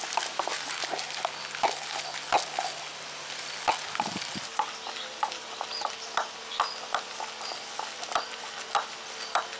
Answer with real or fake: real